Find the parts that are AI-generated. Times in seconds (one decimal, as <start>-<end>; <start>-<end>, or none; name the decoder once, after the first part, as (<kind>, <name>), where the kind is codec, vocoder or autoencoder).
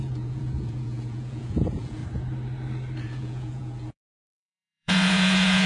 0.0-2.0 (vocoder, Vocos); 3.0-5.7